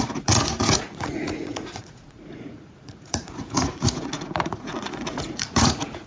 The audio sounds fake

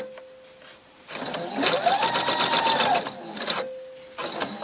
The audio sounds real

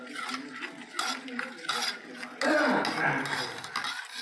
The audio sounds real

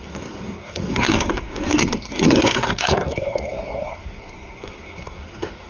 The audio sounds fake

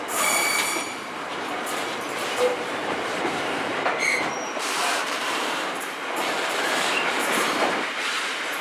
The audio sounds fake